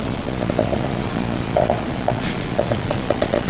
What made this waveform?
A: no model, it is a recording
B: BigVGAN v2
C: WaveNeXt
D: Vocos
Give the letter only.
D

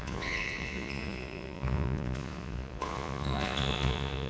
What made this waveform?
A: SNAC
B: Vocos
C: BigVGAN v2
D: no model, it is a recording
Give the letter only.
B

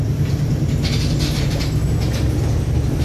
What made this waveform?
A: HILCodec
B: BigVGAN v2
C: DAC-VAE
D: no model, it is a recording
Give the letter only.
D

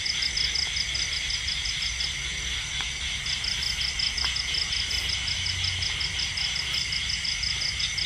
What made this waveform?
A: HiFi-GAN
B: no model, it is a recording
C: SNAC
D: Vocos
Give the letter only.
B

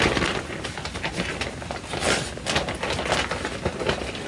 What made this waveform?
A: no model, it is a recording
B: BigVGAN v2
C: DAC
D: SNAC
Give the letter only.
A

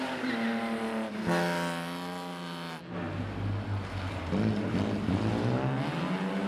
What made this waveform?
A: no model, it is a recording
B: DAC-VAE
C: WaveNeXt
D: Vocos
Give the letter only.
A